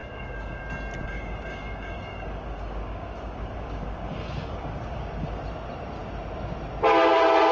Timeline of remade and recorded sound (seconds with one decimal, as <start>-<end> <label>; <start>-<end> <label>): 0.0-0.6 remade; 0.6-1.0 recorded; 1.0-5.4 remade; 5.4-7.5 recorded